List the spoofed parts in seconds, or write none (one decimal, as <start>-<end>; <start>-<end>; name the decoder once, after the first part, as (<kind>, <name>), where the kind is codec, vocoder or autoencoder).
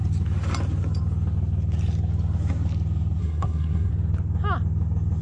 3.2-3.9 (codec, SNAC)